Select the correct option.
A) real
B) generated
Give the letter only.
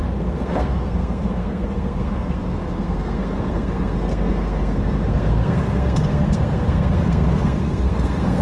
B